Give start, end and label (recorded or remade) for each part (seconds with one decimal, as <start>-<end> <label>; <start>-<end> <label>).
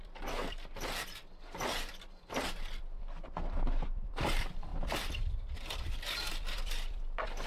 0.0-7.5 remade